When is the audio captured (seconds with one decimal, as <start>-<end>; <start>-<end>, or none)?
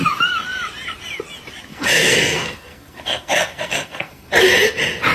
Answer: 0.0-1.7; 4.3-5.1